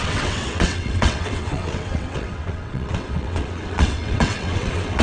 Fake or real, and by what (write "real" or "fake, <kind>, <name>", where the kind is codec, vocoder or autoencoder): fake, vocoder, WaveNeXt